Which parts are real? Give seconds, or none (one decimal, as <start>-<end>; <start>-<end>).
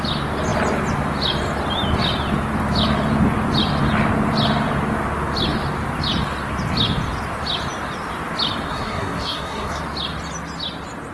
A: 0.0-8.7; 9.8-11.1